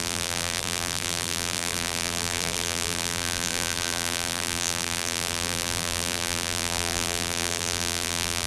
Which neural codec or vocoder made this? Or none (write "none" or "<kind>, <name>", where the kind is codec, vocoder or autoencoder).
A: vocoder, BigVGAN v2